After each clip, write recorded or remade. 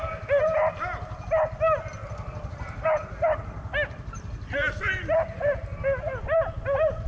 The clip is recorded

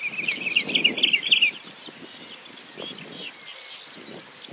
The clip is recorded